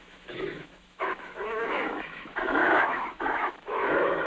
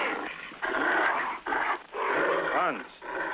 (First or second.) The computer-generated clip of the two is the first